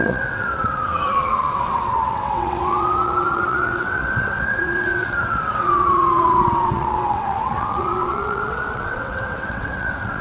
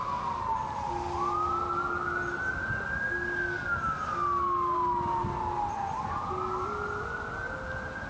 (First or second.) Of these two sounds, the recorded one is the second